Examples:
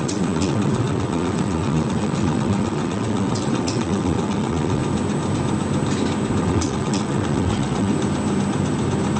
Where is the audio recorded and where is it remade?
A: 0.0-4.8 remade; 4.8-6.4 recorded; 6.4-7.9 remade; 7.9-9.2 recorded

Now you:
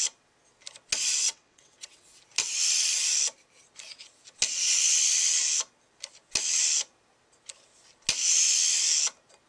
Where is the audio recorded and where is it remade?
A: 0.0-1.2 recorded; 1.2-2.2 remade; 2.2-9.5 recorded

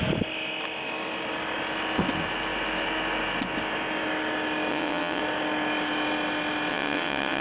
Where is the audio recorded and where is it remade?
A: 0.0-4.7 recorded; 4.7-5.2 remade; 5.2-6.7 recorded; 6.7-7.4 remade

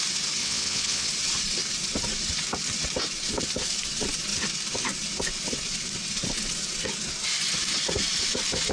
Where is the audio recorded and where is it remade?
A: 0.0-0.4 recorded; 0.4-1.1 remade; 1.1-8.7 recorded

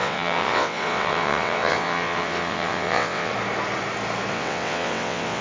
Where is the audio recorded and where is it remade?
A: 0.0-3.3 remade; 3.3-4.3 recorded; 4.3-5.4 remade

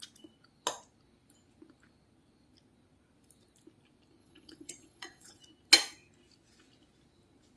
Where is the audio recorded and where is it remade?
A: 0.0-4.2 recorded; 4.2-5.4 remade; 5.4-7.6 recorded